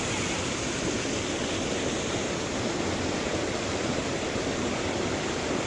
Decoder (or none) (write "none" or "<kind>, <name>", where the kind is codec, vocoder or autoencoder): none